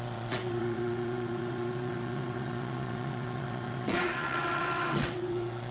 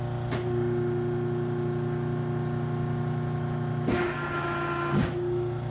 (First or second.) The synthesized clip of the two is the first